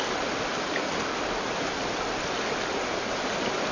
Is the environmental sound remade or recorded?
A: recorded